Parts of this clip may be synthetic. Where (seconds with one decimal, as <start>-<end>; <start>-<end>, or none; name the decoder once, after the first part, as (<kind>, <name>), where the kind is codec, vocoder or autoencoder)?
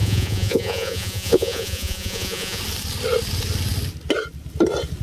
0.0-2.6 (vocoder, Vocos)